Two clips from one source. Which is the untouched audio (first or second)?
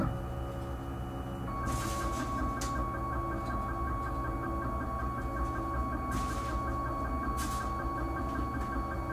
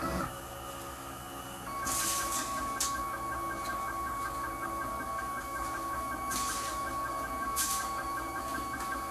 first